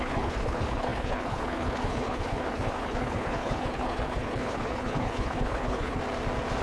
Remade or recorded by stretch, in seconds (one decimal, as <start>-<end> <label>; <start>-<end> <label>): 0.0-6.0 remade; 6.0-6.6 recorded